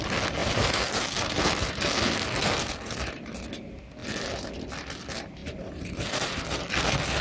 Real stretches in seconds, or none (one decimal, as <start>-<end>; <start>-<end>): 0.0-0.4; 1.1-5.4; 6.4-7.2